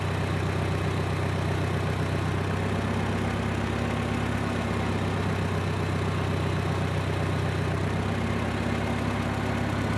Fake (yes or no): no